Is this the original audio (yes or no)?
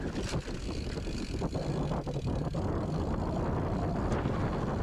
yes